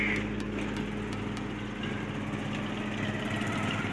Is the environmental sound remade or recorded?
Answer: recorded